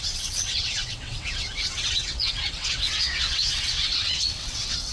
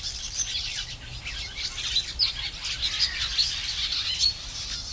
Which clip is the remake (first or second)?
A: first